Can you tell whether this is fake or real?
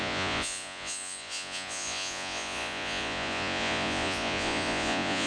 fake